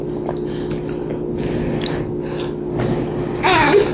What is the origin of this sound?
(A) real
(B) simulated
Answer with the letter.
A